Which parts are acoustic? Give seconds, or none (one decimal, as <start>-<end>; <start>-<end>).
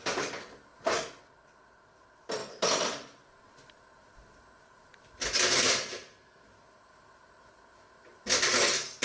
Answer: 0.0-9.0